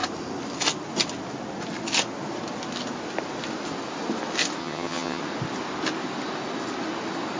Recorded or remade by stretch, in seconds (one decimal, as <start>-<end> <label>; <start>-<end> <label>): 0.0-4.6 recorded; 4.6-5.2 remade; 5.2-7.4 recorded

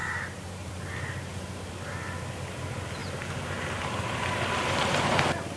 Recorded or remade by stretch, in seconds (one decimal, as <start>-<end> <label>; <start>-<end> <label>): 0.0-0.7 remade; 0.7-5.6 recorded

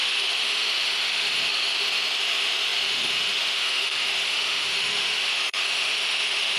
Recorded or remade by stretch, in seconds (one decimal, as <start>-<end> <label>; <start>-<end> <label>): 0.0-6.6 remade

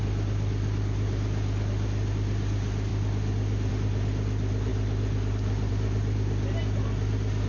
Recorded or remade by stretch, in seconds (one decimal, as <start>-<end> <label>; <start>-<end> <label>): 0.0-7.5 recorded

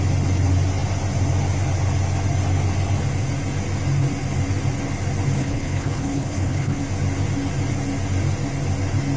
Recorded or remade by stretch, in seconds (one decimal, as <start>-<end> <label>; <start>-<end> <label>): 0.0-5.4 recorded; 5.4-6.8 remade; 6.8-9.2 recorded

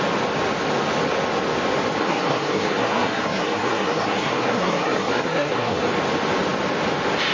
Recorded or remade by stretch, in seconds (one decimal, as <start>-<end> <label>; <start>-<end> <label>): 0.0-2.0 recorded; 2.0-5.9 remade; 5.9-7.3 recorded

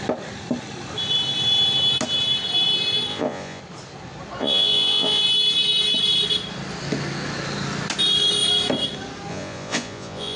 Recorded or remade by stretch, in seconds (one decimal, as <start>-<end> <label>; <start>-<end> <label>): 0.0-3.1 recorded; 3.1-3.6 remade; 3.6-4.4 recorded; 4.4-5.2 remade; 5.2-9.3 recorded; 9.3-10.4 remade

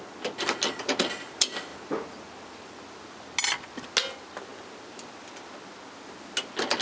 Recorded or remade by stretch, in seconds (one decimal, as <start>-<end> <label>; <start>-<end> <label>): 0.0-6.8 recorded